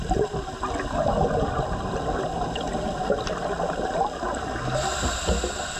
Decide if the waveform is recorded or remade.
recorded